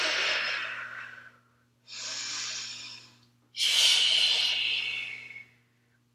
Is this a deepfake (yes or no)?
no